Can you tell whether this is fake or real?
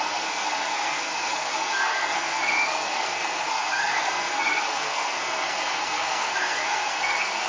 fake